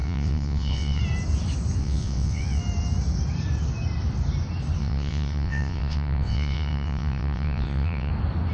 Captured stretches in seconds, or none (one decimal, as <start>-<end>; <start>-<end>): 1.0-1.8; 2.6-4.8; 8.1-8.5